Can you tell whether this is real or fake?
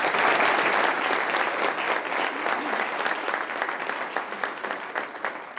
real